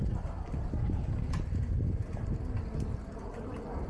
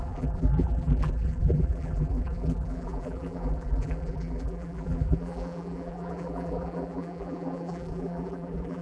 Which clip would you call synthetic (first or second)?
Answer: second